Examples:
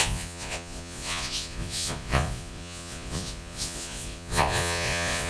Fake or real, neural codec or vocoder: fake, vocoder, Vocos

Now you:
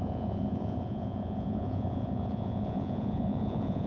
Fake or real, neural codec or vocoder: fake, vocoder, Vocos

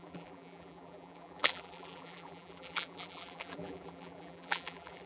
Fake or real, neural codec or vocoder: fake, vocoder, BigVGAN v2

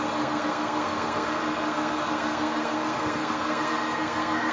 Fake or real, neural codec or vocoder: fake, codec, SNAC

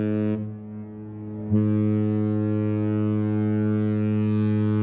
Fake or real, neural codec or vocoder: real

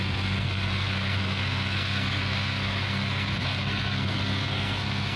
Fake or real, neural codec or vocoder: fake, codec, SNAC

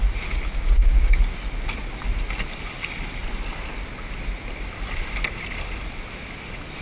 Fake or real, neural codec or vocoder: real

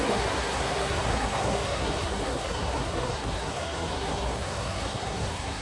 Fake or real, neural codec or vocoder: fake, codec, SNAC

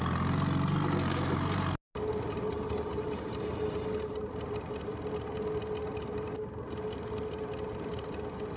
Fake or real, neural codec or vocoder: real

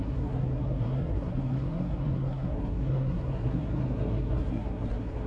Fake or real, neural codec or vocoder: fake, codec, SNAC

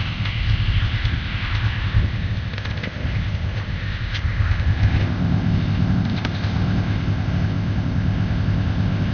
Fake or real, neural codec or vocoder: fake, codec, ZipCodec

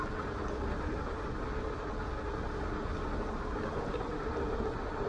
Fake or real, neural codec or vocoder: real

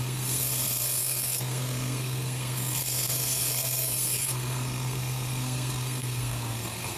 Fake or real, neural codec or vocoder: fake, codec, SNAC